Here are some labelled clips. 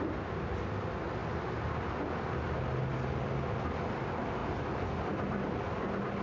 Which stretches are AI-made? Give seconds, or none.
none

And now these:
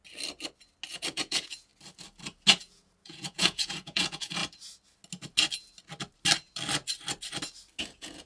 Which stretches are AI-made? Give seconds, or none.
0.9-1.7 (vocoder, Vocos); 2.5-4.4; 7.8-8.3

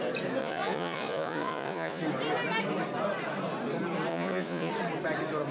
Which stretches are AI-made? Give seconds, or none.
0.4-2.0 (vocoder, Vocos); 4.1-4.7

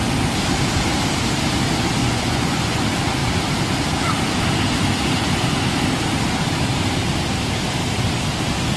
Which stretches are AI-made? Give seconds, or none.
2.0-2.8 (vocoder, Vocos)